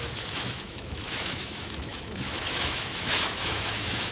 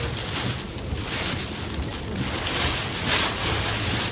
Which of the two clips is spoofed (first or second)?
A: first